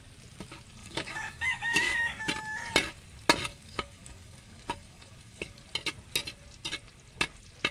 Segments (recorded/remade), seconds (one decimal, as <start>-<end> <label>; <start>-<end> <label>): 0.0-0.8 recorded; 0.8-2.2 remade; 2.2-3.5 recorded; 3.5-5.6 remade; 5.6-7.7 recorded